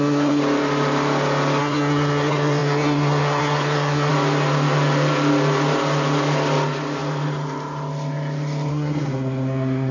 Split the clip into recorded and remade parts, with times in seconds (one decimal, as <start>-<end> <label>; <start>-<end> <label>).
0.0-0.4 remade; 0.4-1.6 recorded; 1.6-4.1 remade; 4.1-8.7 recorded; 8.7-9.9 remade